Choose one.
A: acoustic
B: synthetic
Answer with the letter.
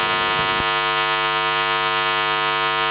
A